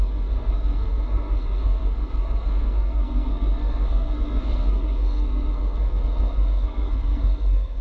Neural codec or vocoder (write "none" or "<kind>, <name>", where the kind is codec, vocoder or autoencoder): codec, SNAC